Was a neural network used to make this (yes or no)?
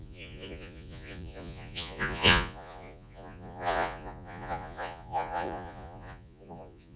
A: yes